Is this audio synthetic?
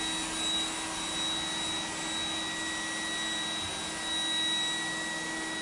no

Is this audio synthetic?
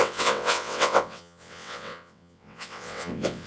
yes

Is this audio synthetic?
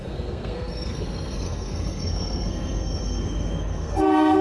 yes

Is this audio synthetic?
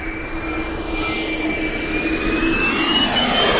no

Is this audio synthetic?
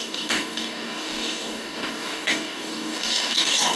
yes